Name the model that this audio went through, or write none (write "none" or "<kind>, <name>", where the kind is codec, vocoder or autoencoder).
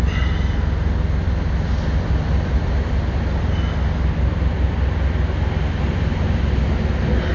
none